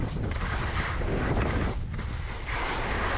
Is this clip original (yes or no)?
yes